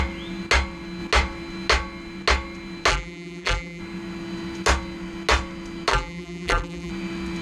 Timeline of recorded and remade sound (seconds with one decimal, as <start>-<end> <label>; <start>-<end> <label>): 0.0-2.9 recorded; 2.9-3.8 remade; 3.8-5.9 recorded; 5.9-6.9 remade; 6.9-7.4 recorded